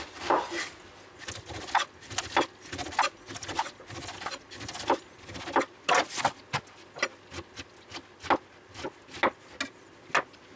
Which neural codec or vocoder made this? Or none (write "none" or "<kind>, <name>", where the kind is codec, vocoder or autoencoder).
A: none